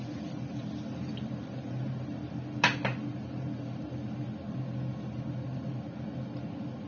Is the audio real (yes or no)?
yes